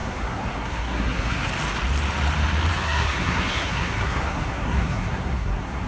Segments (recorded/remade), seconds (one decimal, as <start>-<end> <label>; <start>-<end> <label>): 0.0-1.5 remade; 1.5-2.7 recorded; 2.7-5.9 remade